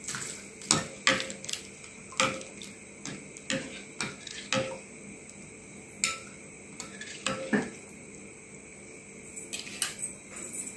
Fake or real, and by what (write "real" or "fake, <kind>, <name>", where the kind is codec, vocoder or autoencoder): real